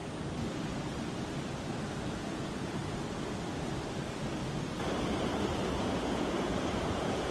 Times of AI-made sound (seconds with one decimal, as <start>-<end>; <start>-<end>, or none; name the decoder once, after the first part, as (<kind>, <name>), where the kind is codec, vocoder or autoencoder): 2.0-2.8 (vocoder, Vocos); 5.8-7.3